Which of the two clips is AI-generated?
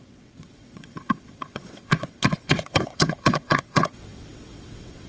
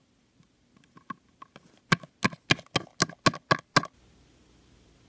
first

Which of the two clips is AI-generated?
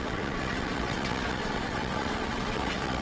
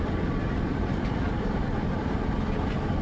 first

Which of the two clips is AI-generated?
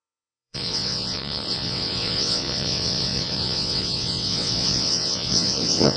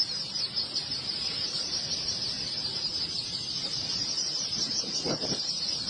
first